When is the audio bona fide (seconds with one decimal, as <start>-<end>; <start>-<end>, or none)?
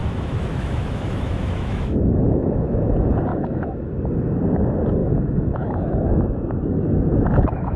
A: 2.9-3.3; 4.0-5.0